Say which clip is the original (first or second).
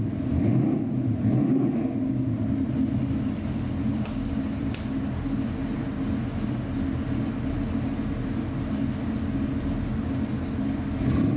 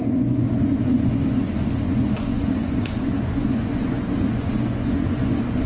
first